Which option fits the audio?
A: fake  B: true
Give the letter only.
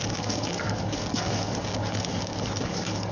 A